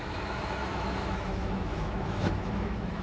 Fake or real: fake